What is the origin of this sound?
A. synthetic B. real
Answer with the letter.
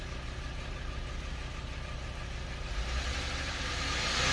B